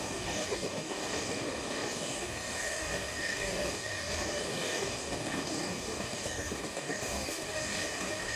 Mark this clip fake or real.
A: fake